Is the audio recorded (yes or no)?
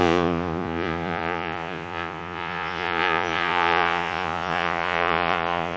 no